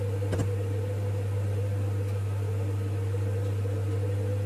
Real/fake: real